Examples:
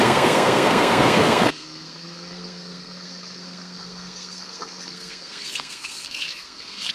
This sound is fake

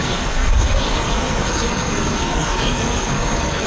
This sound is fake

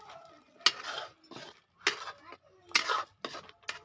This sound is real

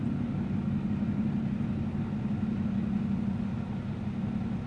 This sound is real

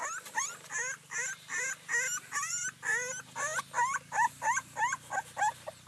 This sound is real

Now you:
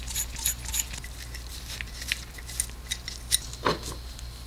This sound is real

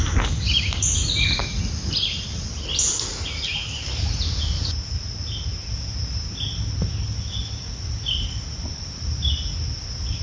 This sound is real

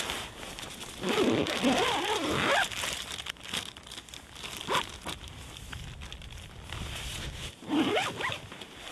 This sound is real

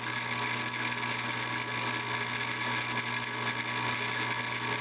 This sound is real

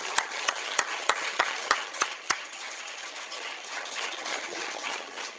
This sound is fake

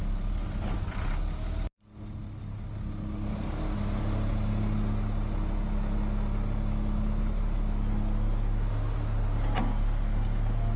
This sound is real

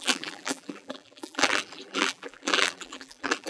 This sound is fake